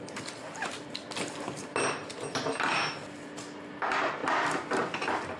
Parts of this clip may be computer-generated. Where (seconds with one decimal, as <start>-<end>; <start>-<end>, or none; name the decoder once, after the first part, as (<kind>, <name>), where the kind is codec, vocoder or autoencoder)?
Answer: none